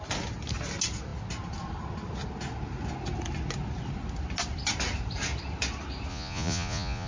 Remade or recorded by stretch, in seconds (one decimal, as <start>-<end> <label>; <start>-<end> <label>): 0.0-6.1 recorded; 6.1-7.1 remade